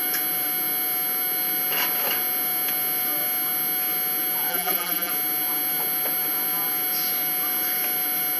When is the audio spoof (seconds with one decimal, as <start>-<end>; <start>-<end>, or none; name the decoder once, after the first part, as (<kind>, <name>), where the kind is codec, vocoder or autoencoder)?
4.5-5.1 (vocoder, BigVGAN v2)